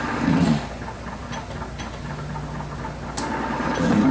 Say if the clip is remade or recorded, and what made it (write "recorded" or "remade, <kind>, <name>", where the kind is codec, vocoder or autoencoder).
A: recorded